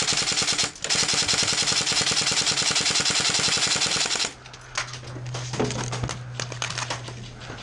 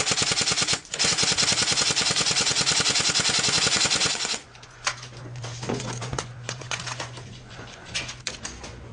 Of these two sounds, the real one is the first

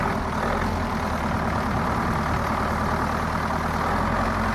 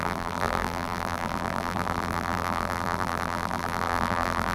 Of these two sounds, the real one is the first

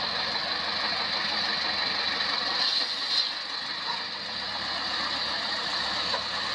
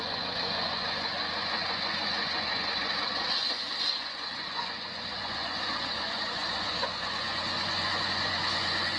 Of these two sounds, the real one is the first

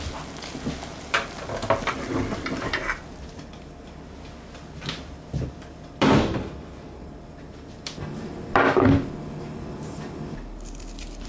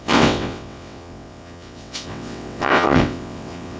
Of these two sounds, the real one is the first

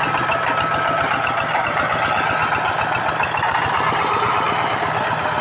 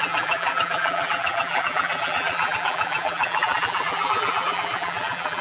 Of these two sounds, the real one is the first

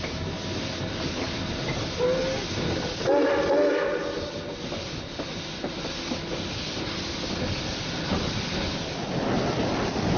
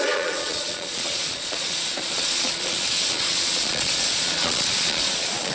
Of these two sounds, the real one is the first